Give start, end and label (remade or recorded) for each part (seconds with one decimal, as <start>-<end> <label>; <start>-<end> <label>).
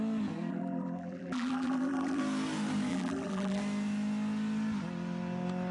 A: 0.0-0.5 recorded; 0.5-2.2 remade; 2.2-2.9 recorded; 2.9-3.6 remade; 3.6-5.7 recorded